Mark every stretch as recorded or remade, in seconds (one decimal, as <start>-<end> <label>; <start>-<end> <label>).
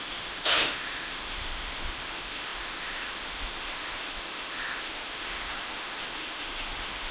0.0-7.1 remade